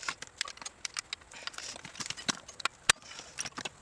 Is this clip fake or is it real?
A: real